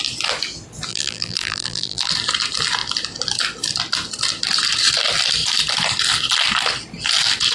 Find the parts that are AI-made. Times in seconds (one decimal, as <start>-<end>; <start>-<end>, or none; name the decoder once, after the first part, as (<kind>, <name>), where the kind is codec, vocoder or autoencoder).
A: 0.9-2.1 (vocoder, BigVGAN v2)